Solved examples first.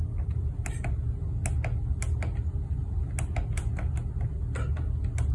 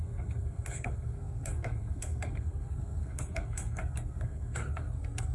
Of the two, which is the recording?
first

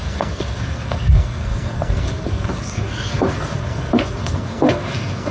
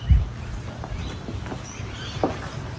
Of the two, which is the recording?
second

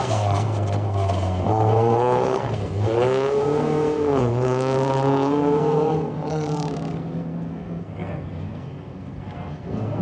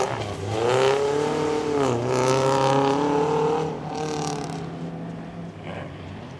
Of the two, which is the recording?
second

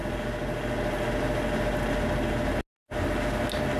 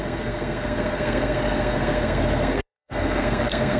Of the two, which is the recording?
first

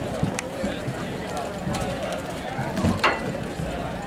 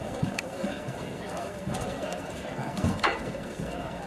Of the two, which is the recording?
first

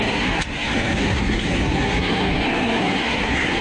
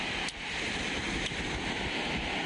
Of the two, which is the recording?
second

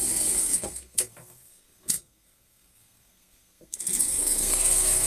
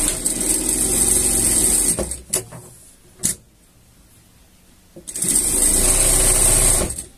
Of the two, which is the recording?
second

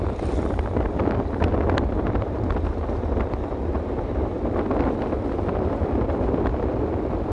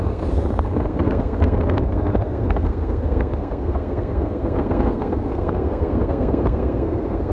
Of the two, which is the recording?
first